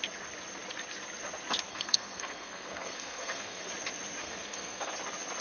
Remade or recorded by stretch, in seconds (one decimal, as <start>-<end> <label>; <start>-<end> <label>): 0.0-1.7 recorded; 1.7-3.7 remade; 3.7-4.2 recorded; 4.2-4.9 remade; 4.9-5.4 recorded